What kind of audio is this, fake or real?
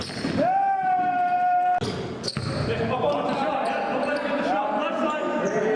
real